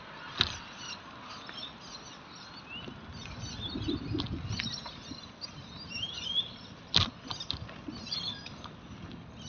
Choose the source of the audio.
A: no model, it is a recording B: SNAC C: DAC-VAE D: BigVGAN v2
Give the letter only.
A